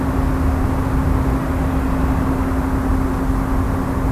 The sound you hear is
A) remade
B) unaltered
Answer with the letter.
B